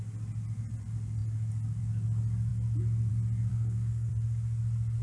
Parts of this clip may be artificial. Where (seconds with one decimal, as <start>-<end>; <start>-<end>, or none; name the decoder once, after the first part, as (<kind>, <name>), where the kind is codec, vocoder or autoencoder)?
3.5-4.1 (codec, SNAC)